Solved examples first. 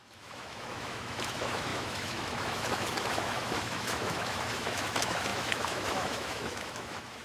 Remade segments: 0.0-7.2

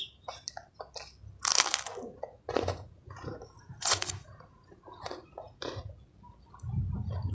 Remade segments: 2.1-5.9

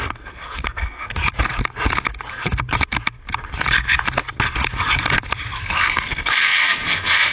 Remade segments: 0.0-1.2; 5.6-7.3

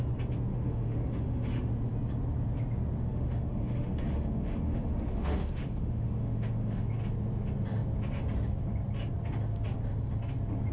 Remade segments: 0.5-1.7; 3.0-6.9

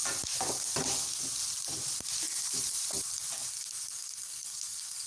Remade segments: 3.5-5.1

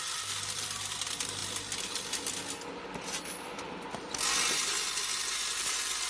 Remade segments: none

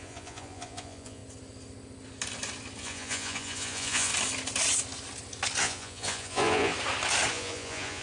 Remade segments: 0.0-1.2; 2.8-4.1; 5.6-6.7; 7.3-8.0

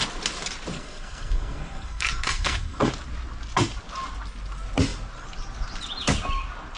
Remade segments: 0.7-2.9